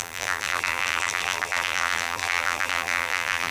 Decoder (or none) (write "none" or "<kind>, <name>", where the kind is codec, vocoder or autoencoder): vocoder, BigVGAN v2